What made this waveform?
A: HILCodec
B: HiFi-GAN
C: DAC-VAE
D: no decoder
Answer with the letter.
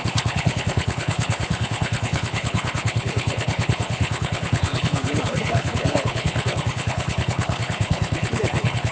A